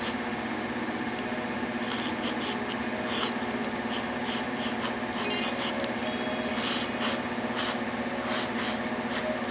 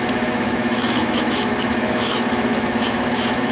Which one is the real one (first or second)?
first